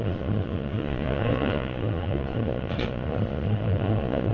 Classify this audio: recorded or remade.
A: remade